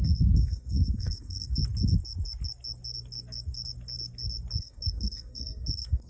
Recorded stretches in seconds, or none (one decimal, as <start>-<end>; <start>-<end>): 1.6-4.6